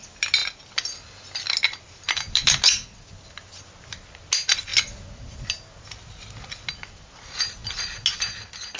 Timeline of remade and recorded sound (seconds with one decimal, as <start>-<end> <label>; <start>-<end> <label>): 0.0-8.8 recorded